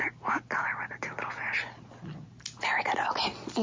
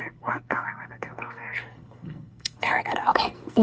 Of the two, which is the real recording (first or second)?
first